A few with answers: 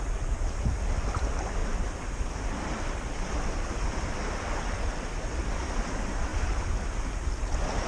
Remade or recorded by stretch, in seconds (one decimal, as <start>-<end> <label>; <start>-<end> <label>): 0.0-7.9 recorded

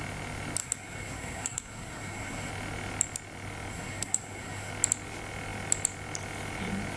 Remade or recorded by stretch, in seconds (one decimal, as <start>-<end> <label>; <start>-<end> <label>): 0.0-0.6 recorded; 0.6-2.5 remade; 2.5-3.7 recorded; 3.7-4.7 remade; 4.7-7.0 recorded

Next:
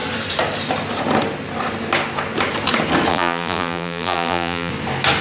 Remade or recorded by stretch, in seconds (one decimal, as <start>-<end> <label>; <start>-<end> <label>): 0.0-3.1 recorded; 3.1-4.7 remade; 4.7-5.2 recorded

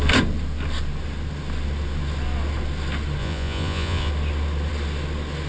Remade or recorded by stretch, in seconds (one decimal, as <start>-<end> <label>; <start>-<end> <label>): 0.0-3.2 recorded; 3.2-4.1 remade; 4.1-5.5 recorded